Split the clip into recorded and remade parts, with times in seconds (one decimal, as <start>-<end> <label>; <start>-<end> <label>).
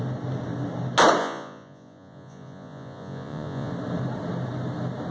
0.0-1.2 recorded; 1.2-3.7 remade; 3.7-5.1 recorded